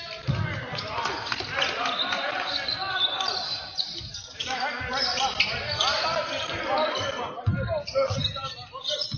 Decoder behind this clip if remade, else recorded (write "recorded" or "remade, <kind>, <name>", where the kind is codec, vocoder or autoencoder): recorded